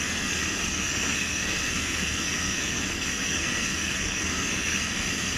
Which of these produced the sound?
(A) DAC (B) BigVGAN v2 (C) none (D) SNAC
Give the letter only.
D